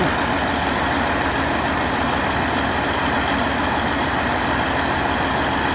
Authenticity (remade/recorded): recorded